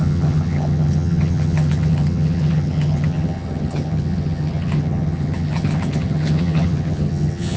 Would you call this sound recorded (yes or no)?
no